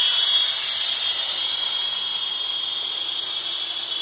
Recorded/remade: recorded